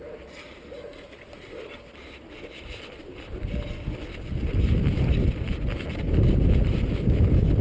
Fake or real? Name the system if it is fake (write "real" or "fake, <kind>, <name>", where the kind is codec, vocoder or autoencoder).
real